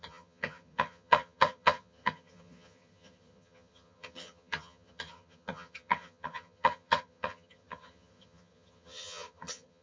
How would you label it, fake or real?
fake